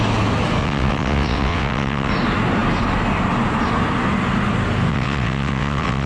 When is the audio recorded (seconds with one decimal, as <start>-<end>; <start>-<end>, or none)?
0.0-0.6; 2.1-4.9